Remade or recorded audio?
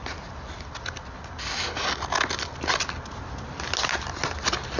recorded